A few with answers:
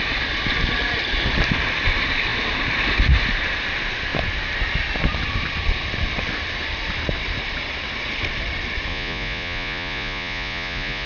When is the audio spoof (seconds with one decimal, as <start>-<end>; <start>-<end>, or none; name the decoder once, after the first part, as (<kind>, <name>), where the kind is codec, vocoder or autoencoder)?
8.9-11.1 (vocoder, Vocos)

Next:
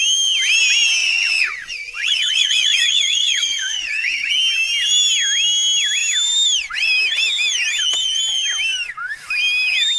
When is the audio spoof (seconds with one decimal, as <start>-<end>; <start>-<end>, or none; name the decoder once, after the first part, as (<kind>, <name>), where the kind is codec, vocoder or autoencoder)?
1.0-4.3 (vocoder, Vocos)

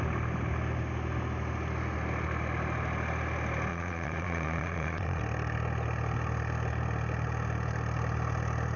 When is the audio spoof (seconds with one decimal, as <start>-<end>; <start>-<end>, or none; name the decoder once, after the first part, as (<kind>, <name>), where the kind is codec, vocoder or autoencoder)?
3.7-5.2 (vocoder, Vocos)

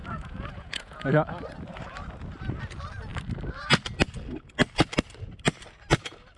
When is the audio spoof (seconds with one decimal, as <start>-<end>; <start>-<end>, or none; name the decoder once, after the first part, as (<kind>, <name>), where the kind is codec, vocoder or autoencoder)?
0.0-1.1 (vocoder, Vocos)

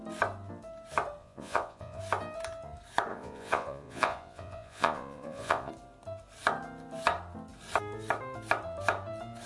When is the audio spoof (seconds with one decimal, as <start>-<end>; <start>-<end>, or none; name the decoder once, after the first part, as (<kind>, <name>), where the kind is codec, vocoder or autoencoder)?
1.2-2.0 (vocoder, Vocos); 3.1-5.7

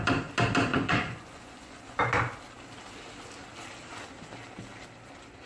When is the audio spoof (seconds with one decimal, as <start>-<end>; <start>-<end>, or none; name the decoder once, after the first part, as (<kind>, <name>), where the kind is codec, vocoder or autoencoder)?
0.7-2.0 (vocoder, Vocos)

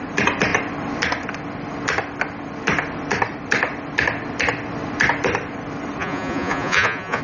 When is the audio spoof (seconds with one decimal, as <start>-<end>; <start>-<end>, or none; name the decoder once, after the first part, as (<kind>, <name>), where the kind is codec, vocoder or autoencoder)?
6.0-7.2 (vocoder, Vocos)

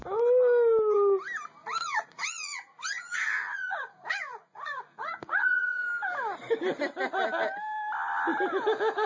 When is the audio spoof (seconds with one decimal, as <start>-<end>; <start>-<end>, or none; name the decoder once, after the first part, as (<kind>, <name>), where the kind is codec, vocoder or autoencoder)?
1.6-5.9 (vocoder, Vocos)